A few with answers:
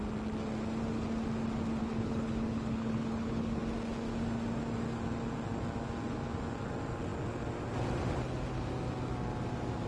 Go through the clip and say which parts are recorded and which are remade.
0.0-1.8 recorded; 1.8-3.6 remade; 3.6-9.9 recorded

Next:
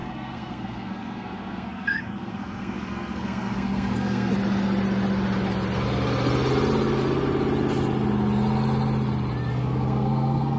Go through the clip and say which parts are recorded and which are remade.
0.0-4.3 remade; 4.3-9.5 recorded; 9.5-10.6 remade

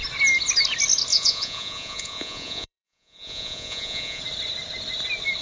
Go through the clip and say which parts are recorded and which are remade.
0.0-1.1 recorded; 1.1-4.2 remade; 4.2-5.4 recorded